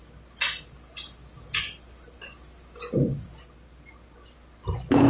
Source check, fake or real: real